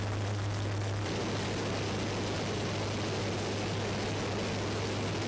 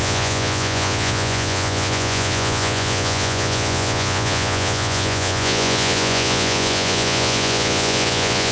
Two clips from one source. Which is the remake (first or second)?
second